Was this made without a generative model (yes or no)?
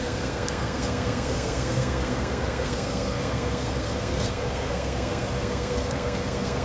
no